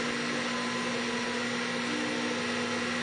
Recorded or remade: recorded